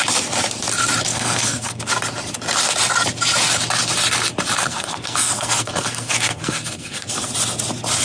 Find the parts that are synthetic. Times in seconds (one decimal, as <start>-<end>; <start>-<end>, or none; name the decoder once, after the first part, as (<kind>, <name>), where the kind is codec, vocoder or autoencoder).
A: 1.1-1.8 (codec, SNAC); 4.6-7.3